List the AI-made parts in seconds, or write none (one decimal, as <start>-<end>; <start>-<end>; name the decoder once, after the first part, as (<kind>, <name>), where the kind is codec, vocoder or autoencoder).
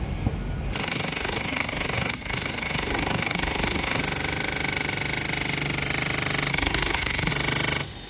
0.8-4.0 (codec, SNAC); 6.5-7.3